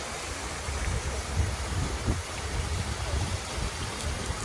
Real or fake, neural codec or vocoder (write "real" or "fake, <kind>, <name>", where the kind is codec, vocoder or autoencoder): real